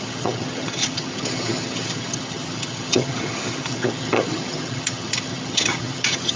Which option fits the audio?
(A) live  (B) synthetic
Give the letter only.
B